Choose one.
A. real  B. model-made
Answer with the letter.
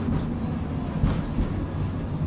A